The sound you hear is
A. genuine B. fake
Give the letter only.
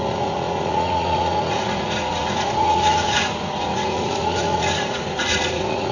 B